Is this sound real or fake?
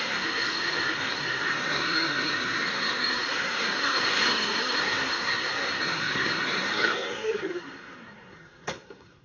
fake